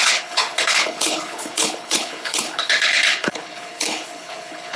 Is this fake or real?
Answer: fake